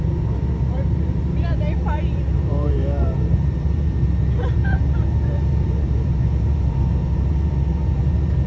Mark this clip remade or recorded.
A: remade